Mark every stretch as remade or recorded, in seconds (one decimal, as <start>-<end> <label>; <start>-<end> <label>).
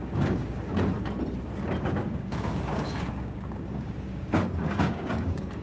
0.0-0.9 remade; 0.9-1.8 recorded; 1.8-5.6 remade